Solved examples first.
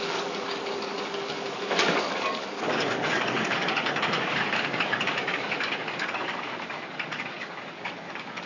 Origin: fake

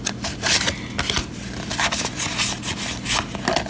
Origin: real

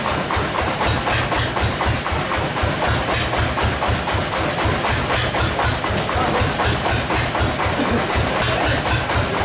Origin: real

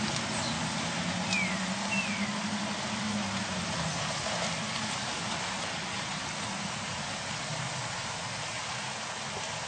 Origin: real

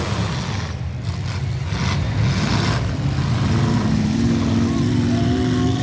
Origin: real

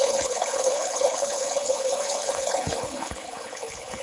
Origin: fake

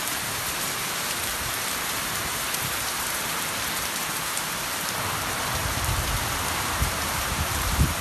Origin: fake